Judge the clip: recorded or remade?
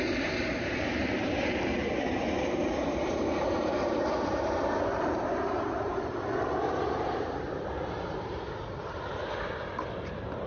remade